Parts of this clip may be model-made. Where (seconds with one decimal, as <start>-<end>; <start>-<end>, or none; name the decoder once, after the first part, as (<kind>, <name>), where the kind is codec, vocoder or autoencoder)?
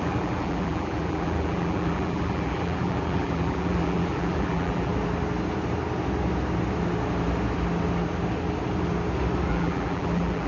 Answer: 0.0-4.9 (vocoder, BigVGAN v2); 9.5-10.5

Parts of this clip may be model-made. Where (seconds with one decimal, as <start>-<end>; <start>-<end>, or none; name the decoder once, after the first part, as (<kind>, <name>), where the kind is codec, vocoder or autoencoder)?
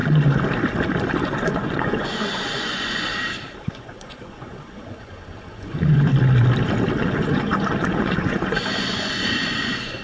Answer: 1.2-3.1 (vocoder, Vocos); 3.6-6.1; 7.0-10.0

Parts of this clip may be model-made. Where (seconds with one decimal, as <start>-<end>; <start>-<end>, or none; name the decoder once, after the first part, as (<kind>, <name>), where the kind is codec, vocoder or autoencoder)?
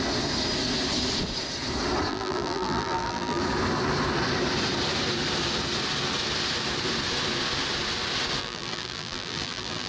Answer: 2.1-3.4 (vocoder, BigVGAN v2); 8.4-9.9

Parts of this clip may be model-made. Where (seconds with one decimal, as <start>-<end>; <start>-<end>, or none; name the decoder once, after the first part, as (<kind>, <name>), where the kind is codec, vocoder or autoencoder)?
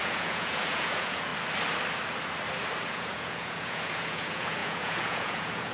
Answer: 0.0-1.3 (vocoder, Vocos); 2.9-5.7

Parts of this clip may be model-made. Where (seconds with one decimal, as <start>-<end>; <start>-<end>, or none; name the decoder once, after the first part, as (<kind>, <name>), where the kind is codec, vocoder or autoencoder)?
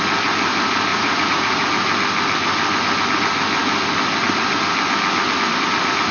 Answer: 0.9-1.7 (vocoder, Vocos)